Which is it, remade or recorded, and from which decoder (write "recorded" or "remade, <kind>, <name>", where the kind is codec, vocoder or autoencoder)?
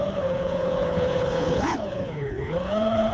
remade, codec, HILCodec